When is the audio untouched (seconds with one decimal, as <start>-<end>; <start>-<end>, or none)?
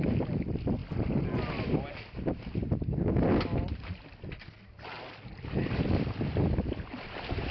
0.0-7.5